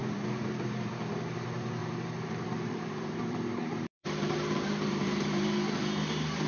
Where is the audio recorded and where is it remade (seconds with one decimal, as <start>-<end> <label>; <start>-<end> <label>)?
0.0-0.9 remade; 0.9-1.8 recorded; 1.8-5.6 remade; 5.6-6.5 recorded